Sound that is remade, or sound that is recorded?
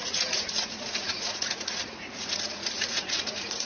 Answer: remade